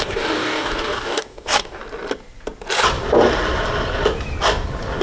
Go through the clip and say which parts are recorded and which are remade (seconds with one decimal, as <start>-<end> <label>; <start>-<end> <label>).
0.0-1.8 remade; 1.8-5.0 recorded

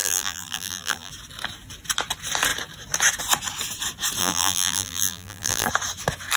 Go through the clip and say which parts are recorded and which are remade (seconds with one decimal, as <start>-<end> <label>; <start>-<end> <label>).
0.0-1.1 remade; 1.1-4.2 recorded; 4.2-5.7 remade; 5.7-6.4 recorded

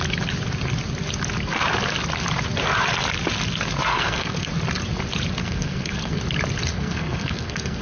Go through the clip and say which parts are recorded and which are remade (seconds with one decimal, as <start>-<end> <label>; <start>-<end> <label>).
0.0-3.9 recorded; 3.9-4.5 remade; 4.5-5.4 recorded; 5.4-6.2 remade; 6.2-6.7 recorded; 6.7-7.8 remade